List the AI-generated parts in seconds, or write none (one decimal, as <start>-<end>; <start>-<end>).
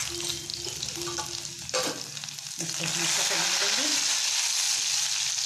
none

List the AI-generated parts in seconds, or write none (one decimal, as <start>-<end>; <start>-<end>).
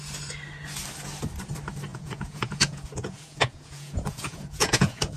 1.9-5.2